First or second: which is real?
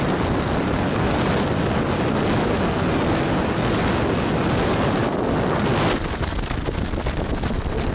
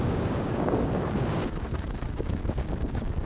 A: first